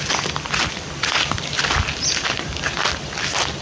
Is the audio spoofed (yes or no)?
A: no